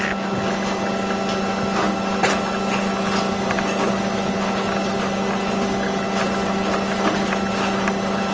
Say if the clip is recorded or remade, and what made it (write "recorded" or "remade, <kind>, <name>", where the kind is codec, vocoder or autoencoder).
recorded